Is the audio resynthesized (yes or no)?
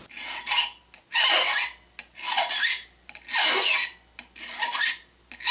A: no